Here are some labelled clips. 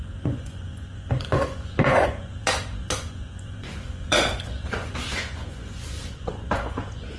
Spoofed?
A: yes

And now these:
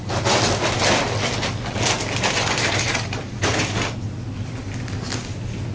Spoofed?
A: no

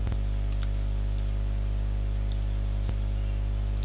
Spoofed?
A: no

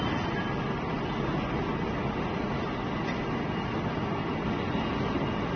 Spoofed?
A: no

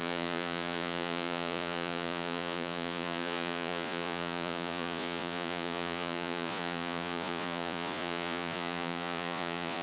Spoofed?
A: yes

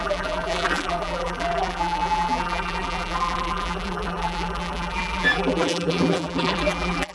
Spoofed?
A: yes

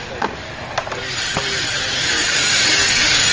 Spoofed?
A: no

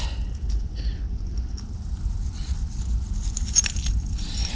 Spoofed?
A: no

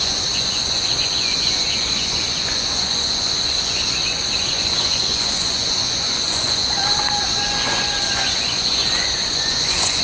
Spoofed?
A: yes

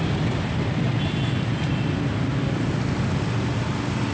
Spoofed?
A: no